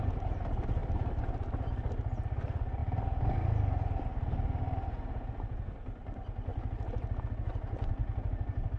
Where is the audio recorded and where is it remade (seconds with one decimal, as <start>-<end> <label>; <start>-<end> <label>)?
0.0-0.8 recorded; 0.8-1.7 remade; 1.7-8.0 recorded; 8.0-8.8 remade